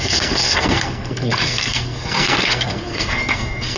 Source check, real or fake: fake